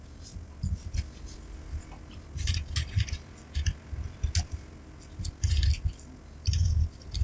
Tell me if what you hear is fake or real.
real